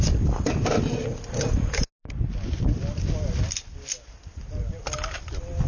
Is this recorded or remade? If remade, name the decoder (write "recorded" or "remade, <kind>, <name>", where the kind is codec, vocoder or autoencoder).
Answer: recorded